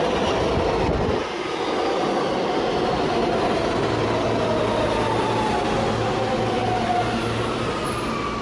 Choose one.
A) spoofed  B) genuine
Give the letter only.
B